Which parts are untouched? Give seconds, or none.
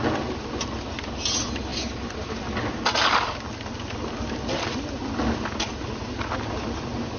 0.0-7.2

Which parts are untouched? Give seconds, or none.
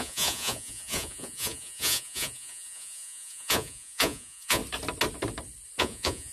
4.6-5.8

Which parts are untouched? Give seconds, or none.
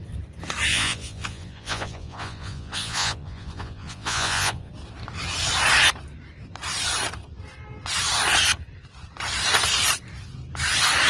0.0-0.7; 4.7-11.1